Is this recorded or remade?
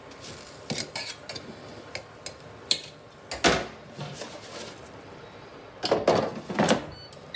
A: recorded